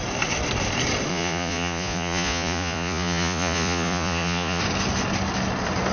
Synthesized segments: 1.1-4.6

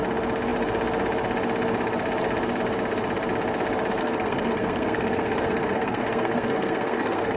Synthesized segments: 4.0-7.4

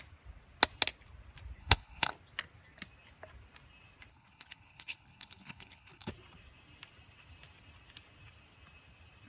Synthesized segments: 1.6-2.1; 4.1-6.1

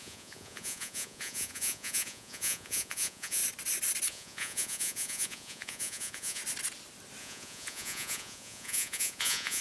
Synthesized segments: 0.0-3.4; 4.1-6.4; 7.2-9.6

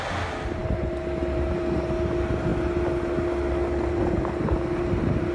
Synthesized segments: none